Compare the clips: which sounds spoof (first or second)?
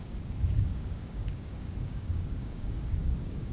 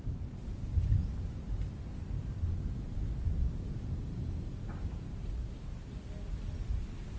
first